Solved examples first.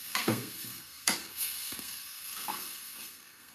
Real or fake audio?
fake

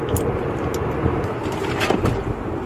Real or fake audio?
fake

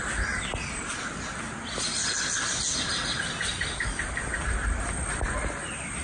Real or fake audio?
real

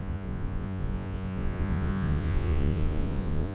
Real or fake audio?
fake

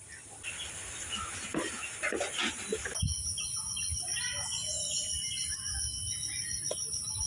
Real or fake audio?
real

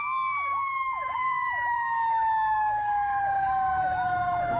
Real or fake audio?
fake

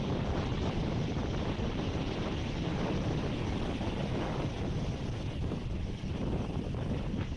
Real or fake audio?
fake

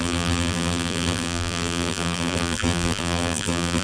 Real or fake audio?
fake